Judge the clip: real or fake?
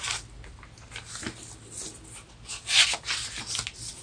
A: real